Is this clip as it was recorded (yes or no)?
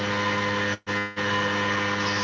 yes